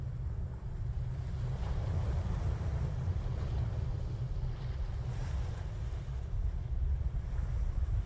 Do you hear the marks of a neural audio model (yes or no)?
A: no